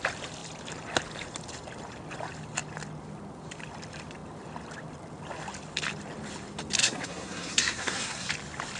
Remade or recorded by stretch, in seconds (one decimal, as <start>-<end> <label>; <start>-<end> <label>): 0.0-6.8 recorded; 6.8-8.3 remade; 8.3-8.8 recorded